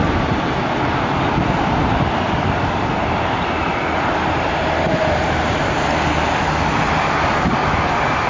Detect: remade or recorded recorded